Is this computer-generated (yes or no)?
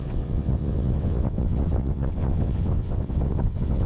yes